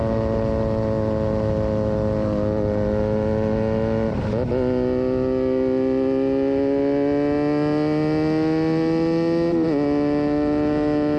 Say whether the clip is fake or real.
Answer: real